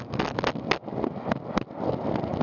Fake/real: real